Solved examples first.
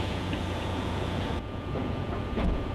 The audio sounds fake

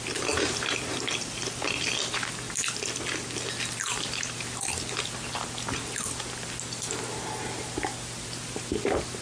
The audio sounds real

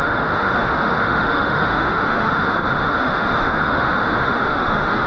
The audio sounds fake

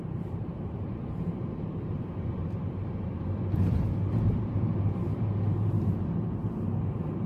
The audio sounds fake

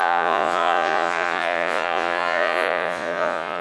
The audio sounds fake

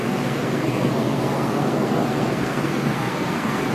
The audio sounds fake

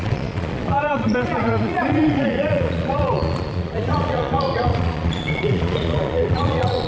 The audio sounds fake